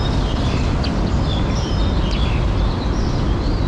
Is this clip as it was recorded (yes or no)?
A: yes